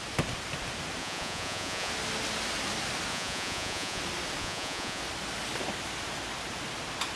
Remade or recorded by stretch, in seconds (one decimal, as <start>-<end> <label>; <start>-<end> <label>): 0.0-1.0 recorded; 1.0-1.9 remade; 1.9-3.1 recorded; 3.1-4.0 remade; 4.0-4.4 recorded; 4.4-5.0 remade; 5.0-7.2 recorded